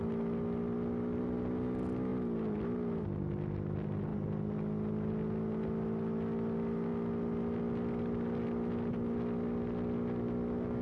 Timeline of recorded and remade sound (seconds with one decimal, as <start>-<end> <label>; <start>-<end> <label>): 0.0-10.8 recorded

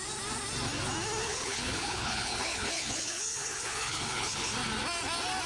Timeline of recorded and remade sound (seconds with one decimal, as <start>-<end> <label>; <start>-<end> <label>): 0.0-1.2 recorded; 1.2-4.5 remade; 4.5-5.5 recorded

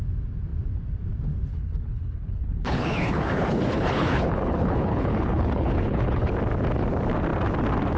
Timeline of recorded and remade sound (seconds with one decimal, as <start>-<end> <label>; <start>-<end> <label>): 0.0-1.5 recorded; 1.5-6.3 remade; 6.3-8.0 recorded

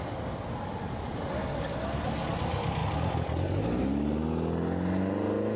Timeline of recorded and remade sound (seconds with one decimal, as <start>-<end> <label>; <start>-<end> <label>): 0.0-5.6 recorded

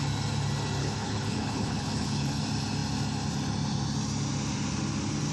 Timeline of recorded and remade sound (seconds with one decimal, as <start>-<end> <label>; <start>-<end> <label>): 0.0-0.8 recorded; 0.8-2.4 remade; 2.4-5.3 recorded

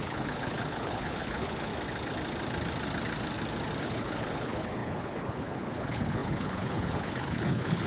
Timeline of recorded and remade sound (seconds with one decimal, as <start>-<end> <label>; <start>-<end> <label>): 0.0-1.7 remade; 1.7-3.8 recorded; 3.8-7.9 remade

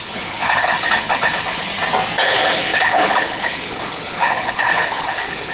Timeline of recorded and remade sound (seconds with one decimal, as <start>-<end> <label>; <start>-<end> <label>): 0.0-1.7 remade; 1.7-2.2 recorded; 2.2-5.5 remade

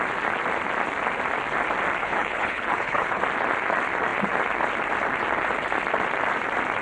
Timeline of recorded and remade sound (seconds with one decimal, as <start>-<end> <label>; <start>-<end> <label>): 0.0-2.0 recorded; 2.0-3.2 remade; 3.2-6.8 recorded